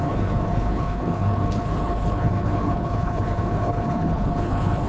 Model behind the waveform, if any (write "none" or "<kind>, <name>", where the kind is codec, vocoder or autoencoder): codec, HILCodec